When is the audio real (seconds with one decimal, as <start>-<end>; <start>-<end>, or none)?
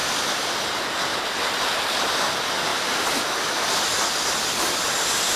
0.7-1.1; 1.7-5.4